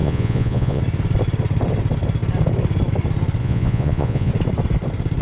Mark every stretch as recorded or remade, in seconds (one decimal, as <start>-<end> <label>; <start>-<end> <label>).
0.0-0.8 remade; 0.8-3.4 recorded; 3.4-4.3 remade; 4.3-5.2 recorded